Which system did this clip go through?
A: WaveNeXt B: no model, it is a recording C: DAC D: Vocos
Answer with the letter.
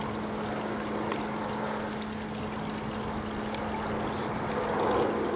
B